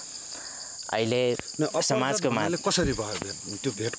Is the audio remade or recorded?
recorded